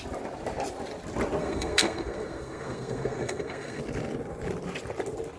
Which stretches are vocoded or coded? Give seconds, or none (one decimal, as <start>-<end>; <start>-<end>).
1.4-3.8